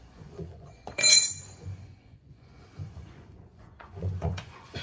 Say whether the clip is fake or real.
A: fake